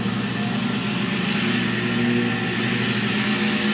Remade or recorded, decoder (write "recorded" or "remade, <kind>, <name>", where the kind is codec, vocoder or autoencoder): recorded